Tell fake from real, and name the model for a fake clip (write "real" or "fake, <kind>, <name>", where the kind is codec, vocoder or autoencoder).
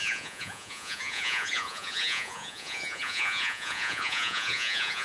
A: fake, vocoder, Vocos